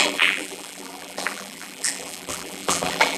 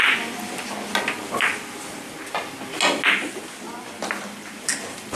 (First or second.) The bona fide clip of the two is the second